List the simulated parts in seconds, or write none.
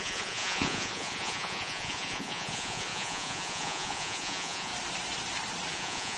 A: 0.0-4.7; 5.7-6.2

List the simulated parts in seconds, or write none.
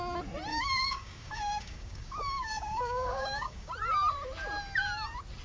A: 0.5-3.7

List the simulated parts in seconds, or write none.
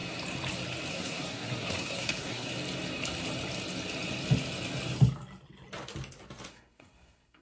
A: 0.9-2.5; 6.5-7.4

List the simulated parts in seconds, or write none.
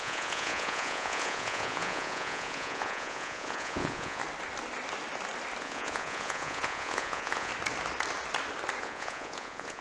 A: 0.0-4.2; 5.6-7.5; 8.8-9.8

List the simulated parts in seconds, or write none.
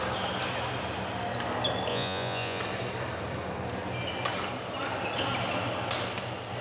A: 1.9-2.6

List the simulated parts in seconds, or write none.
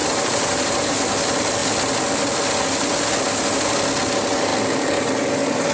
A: 0.0-1.1